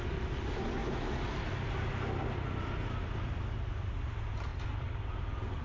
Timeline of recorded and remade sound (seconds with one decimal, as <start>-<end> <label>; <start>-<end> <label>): 0.0-5.6 recorded